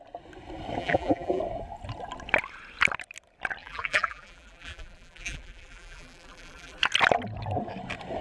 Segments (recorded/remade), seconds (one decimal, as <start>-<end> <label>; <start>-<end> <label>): 0.0-0.8 recorded; 0.8-1.4 remade; 1.4-3.6 recorded; 3.6-6.8 remade; 6.8-8.2 recorded